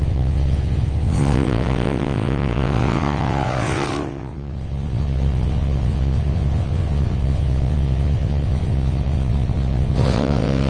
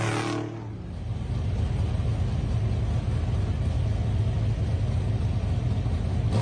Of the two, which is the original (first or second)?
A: second